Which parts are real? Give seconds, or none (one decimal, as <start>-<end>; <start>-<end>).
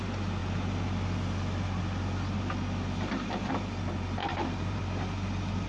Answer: 0.0-4.2; 4.8-5.7